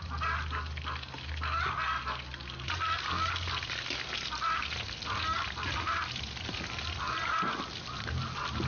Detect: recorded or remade recorded